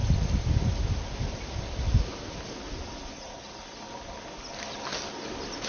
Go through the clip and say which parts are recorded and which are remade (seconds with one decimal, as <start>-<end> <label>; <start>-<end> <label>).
0.0-5.7 recorded